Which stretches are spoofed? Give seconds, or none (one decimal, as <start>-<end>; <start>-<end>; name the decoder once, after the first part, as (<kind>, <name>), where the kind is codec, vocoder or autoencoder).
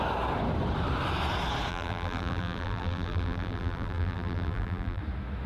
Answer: 1.7-5.0 (vocoder, BigVGAN v2)